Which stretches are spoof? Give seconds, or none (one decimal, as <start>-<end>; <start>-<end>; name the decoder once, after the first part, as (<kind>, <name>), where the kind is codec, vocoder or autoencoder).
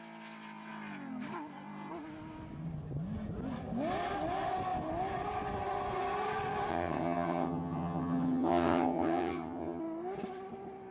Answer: 6.7-9.8 (vocoder, HiFi-GAN)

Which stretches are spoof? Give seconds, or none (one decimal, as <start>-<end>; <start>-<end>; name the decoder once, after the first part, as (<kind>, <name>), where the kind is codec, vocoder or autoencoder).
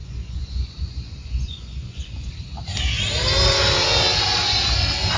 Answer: 0.0-2.3 (vocoder, Vocos)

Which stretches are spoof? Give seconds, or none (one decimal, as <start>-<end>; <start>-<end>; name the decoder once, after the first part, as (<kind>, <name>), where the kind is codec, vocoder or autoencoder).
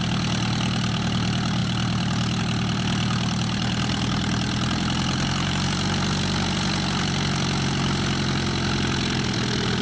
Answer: none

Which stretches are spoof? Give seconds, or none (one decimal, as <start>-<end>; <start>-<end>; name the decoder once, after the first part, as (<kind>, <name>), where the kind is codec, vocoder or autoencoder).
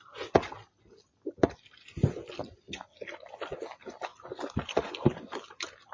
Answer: none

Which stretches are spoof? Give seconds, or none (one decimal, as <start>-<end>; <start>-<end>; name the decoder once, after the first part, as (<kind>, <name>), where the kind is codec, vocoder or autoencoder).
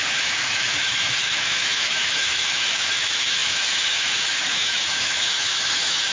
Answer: 0.0-6.1 (autoencoder, DAC-VAE)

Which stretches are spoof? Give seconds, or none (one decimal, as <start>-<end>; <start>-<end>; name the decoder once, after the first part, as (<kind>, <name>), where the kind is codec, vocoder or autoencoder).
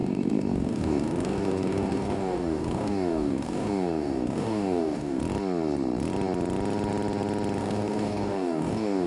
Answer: 0.0-5.2 (codec, DAC); 7.6-9.1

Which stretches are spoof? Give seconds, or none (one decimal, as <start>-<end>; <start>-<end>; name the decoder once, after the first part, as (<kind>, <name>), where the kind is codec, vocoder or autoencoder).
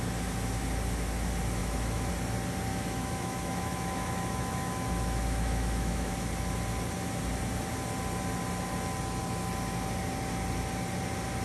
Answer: 1.6-2.1 (autoencoder, DAC-VAE); 2.7-6.1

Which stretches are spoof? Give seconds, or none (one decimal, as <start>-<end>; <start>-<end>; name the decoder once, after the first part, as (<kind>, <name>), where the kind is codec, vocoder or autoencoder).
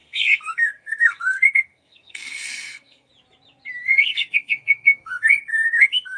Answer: 0.0-3.1 (codec, SNAC); 3.8-6.2